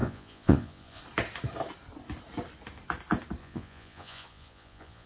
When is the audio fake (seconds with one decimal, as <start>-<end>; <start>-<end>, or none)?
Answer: 0.0-1.0; 3.4-5.1